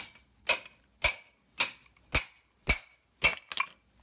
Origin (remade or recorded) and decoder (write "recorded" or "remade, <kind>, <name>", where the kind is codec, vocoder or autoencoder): recorded